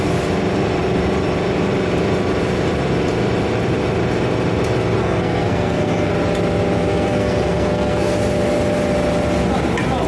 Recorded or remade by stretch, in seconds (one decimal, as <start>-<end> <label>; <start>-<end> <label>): 0.0-5.0 recorded; 5.0-6.1 remade; 6.1-6.9 recorded; 6.9-8.1 remade; 8.1-10.1 recorded